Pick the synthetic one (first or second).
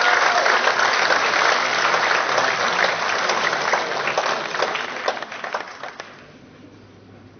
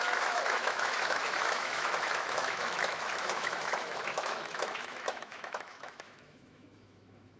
second